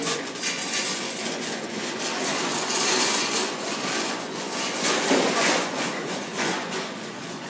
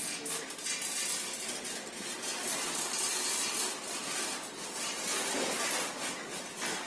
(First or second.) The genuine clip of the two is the second